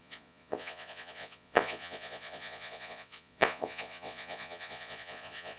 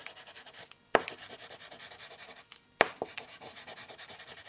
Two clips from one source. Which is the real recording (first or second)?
second